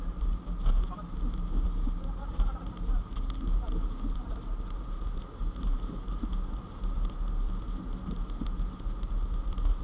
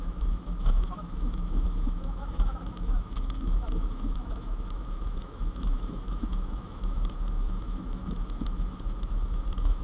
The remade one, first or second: second